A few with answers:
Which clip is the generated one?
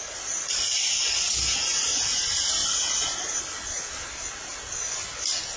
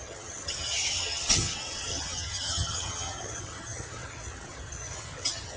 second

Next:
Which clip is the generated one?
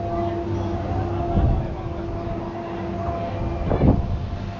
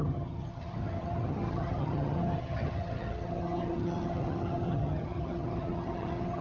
second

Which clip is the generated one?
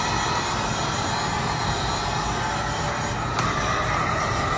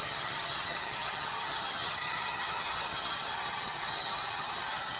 second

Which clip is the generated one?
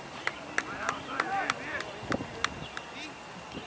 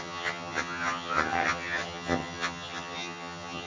second